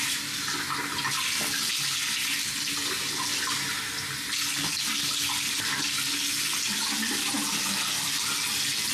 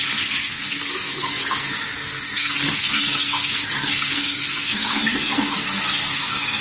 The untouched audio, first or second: first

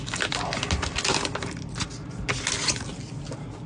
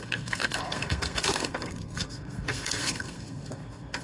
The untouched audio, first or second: first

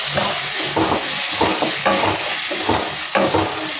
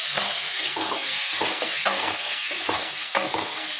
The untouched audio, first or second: first